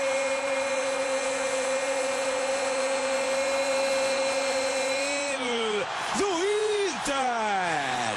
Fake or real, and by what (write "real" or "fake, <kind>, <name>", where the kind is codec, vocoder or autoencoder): fake, vocoder, Vocos